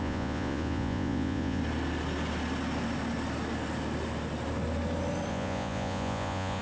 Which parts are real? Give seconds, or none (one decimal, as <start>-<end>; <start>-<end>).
1.6-5.3